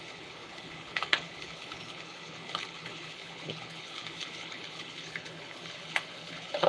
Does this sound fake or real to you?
fake